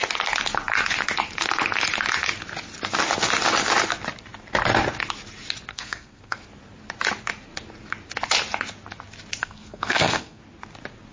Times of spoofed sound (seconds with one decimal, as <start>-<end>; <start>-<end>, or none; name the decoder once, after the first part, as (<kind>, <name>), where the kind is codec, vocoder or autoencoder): 5.7-6.4 (codec, SNAC); 9.4-10.4